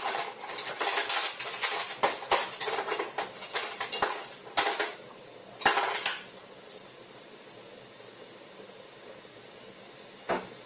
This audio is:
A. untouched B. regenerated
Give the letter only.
A